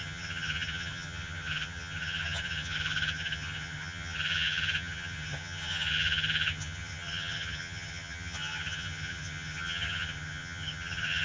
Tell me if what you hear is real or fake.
fake